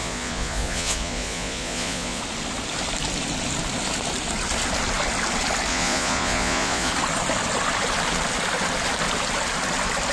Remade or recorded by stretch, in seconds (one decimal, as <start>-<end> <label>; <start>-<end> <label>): 0.0-2.2 remade; 2.2-5.7 recorded; 5.7-6.9 remade; 6.9-10.1 recorded

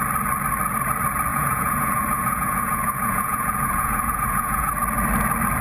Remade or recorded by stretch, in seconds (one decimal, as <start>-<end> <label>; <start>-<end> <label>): 0.0-1.3 recorded; 1.3-4.7 remade; 4.7-5.6 recorded

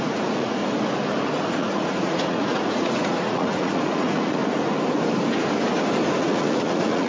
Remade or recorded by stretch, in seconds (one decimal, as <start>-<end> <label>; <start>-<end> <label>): 0.0-0.6 remade; 0.6-1.5 recorded; 1.5-4.4 remade; 4.4-6.2 recorded; 6.2-7.1 remade

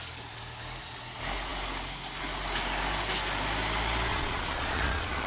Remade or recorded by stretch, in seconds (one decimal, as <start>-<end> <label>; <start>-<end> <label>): 0.0-4.1 recorded; 4.1-5.3 remade